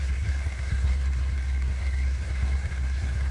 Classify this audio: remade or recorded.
remade